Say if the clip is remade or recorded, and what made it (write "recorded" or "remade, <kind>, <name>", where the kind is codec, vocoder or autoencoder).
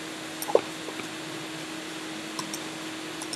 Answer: recorded